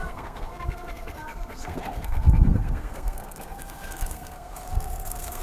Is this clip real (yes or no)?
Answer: no